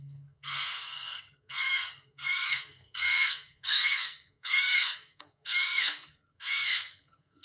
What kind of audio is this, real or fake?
fake